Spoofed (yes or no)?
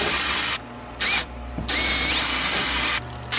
no